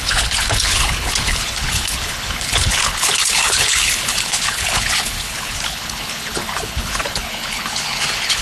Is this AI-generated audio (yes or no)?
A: yes